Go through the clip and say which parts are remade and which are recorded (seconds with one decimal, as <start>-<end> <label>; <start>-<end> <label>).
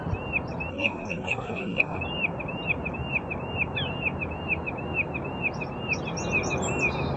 0.0-0.7 recorded; 0.7-2.0 remade; 2.0-7.2 recorded